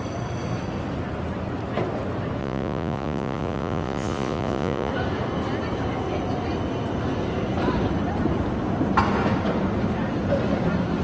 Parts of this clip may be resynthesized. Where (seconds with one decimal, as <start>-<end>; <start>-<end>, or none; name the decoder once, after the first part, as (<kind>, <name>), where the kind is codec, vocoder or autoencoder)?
2.4-4.9 (vocoder, Vocos)